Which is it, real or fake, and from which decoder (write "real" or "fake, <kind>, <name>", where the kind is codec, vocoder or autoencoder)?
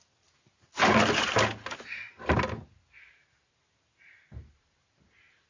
real